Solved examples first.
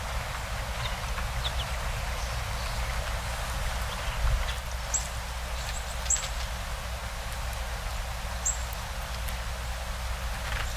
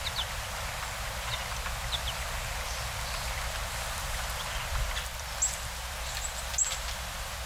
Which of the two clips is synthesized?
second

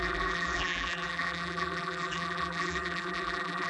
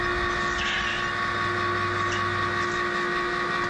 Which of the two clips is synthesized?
first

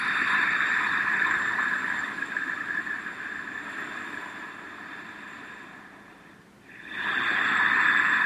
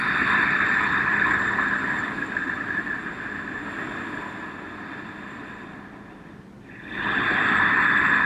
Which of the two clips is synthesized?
first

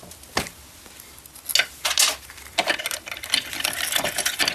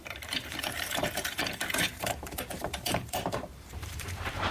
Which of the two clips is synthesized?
second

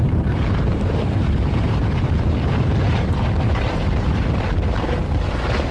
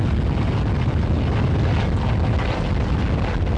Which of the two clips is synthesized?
first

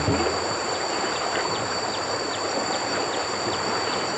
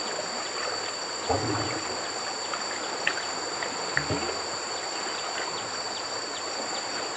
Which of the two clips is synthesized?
first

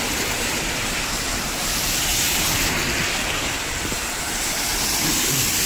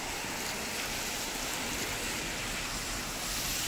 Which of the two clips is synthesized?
first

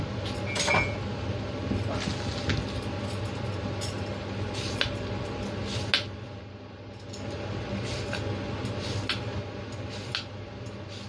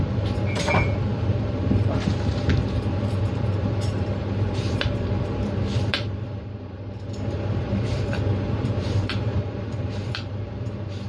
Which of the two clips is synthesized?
second